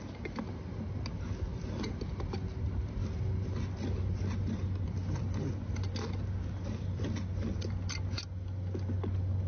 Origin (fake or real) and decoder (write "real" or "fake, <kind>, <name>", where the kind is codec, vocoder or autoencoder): real